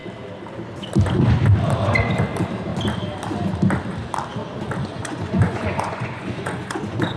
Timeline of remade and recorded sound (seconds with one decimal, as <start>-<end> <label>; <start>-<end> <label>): 0.0-4.8 recorded; 4.8-7.2 remade